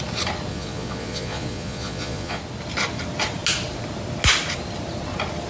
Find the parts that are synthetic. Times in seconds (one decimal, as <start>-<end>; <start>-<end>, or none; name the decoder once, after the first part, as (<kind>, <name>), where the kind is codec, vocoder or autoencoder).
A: 0.5-2.4 (vocoder, Vocos)